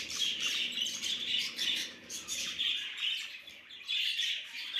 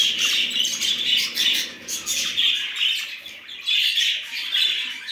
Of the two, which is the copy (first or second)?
first